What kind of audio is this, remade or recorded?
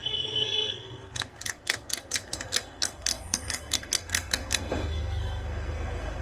remade